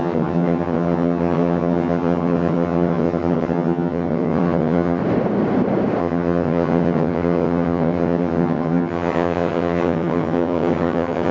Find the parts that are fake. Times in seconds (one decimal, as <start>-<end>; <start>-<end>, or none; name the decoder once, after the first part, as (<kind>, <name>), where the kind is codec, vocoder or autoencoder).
0.0-5.0 (vocoder, HiFi-GAN); 6.0-11.3